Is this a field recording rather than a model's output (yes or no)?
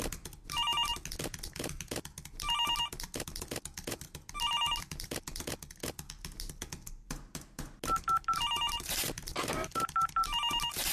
yes